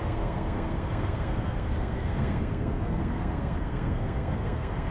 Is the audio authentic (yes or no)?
no